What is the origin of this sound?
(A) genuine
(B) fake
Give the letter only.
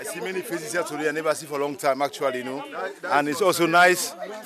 A